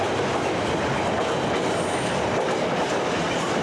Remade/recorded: recorded